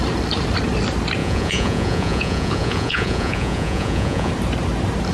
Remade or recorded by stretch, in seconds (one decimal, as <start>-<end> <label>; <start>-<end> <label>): 0.0-1.2 recorded; 1.2-4.3 remade; 4.3-5.1 recorded